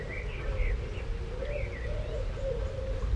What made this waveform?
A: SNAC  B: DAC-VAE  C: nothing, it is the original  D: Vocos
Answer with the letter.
C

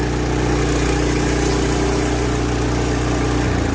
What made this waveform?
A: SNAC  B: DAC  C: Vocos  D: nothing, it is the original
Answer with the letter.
D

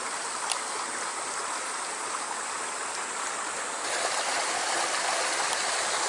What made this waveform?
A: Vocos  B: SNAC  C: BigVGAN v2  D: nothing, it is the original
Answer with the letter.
D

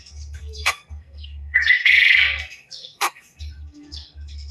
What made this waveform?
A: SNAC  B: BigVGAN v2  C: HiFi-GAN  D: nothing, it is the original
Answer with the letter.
A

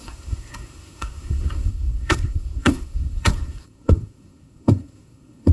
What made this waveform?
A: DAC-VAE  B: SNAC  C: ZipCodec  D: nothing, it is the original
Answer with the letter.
B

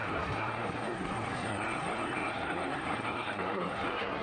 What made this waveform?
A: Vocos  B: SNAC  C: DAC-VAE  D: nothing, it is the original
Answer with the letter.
B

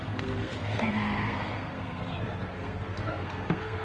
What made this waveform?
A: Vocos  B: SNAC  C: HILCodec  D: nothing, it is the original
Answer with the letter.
B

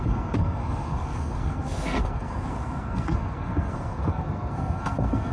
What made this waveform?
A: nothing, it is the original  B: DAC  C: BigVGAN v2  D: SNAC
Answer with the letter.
D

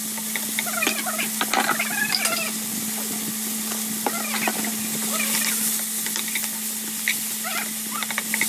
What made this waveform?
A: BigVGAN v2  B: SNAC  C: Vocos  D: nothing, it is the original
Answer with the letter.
D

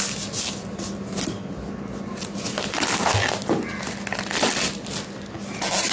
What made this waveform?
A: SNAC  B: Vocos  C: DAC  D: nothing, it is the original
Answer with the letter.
D